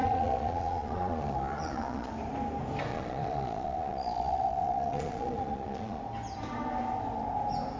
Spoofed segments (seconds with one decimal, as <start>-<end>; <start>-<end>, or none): 0.0-2.1; 2.9-6.0